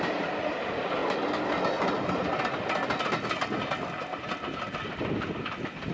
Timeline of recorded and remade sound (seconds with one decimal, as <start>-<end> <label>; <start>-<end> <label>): 0.0-5.9 recorded